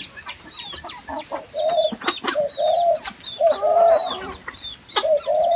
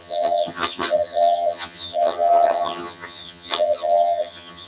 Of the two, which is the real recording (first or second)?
first